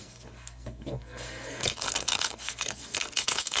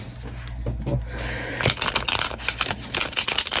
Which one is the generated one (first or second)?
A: first